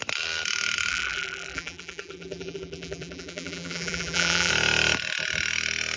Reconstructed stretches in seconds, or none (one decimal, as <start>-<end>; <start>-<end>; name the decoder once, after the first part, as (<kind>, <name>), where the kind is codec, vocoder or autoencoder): 0.9-4.5 (vocoder, BigVGAN v2)